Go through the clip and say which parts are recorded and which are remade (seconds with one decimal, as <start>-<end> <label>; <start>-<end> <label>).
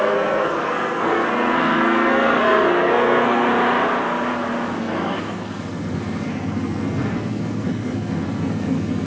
0.0-3.5 remade; 3.5-4.8 recorded; 4.8-9.1 remade